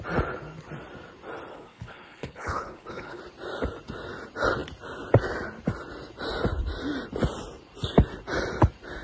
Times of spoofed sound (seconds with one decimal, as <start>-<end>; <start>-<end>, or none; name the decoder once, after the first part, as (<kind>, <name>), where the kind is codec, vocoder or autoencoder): 1.5-3.2 (codec, HILCodec)